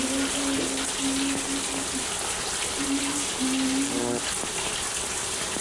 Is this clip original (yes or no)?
yes